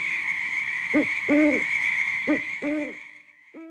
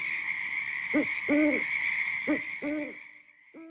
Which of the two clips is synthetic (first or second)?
first